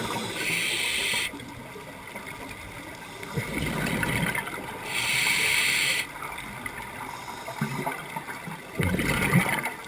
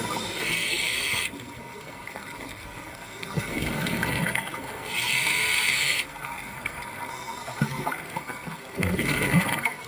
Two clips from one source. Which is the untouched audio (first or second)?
first